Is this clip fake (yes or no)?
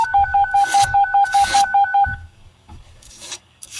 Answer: yes